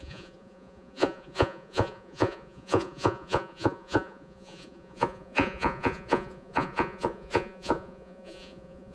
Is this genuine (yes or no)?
no